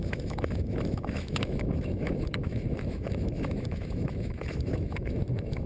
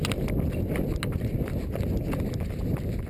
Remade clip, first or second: first